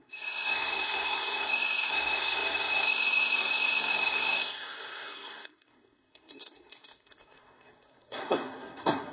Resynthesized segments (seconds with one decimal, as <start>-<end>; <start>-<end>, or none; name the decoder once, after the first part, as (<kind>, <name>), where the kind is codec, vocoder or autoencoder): 0.0-9.1 (codec, SNAC)